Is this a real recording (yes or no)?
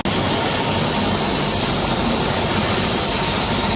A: yes